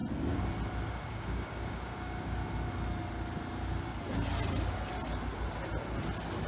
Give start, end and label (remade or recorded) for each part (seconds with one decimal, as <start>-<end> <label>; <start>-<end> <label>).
0.0-0.9 recorded; 0.9-2.4 remade; 2.4-6.5 recorded